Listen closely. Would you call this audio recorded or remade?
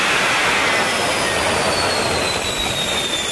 recorded